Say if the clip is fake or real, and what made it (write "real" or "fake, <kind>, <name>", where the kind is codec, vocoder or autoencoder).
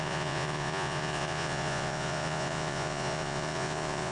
fake, vocoder, Vocos